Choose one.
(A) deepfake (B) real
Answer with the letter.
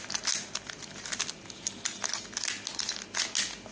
B